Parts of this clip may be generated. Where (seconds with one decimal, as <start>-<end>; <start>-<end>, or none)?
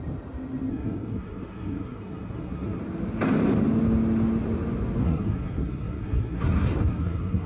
0.7-2.8; 5.0-7.5